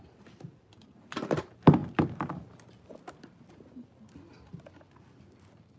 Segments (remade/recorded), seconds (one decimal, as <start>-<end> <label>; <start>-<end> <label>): 0.0-5.8 recorded